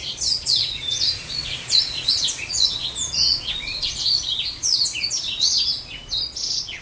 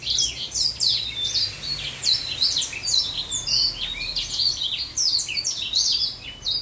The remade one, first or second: first